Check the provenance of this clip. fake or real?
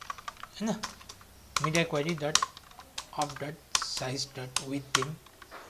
real